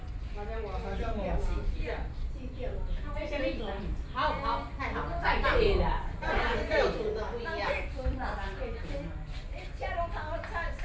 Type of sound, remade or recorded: recorded